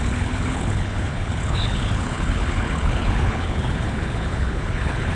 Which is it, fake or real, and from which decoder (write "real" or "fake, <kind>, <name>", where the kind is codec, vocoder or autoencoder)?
fake, codec, HILCodec